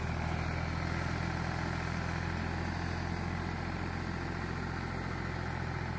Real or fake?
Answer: real